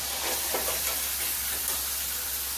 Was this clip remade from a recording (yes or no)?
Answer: no